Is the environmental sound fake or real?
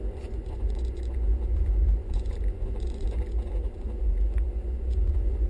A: fake